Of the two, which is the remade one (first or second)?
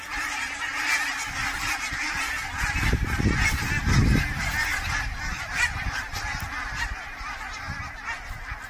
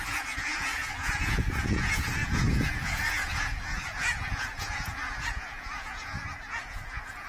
second